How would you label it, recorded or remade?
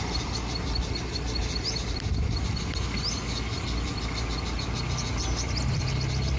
recorded